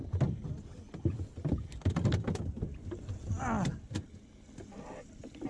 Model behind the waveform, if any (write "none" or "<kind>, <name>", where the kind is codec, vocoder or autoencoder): none